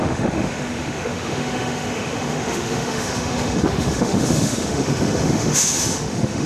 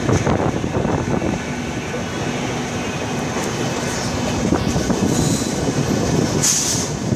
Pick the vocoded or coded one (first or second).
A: first